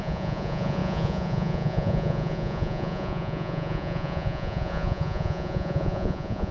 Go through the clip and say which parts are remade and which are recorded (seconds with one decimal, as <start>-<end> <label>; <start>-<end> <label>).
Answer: 0.0-6.5 remade